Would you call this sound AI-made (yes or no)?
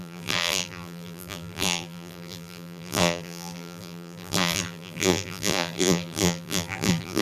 yes